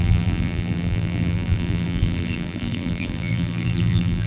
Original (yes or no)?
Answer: no